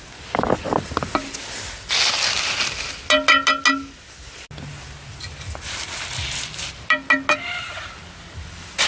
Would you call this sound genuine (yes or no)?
yes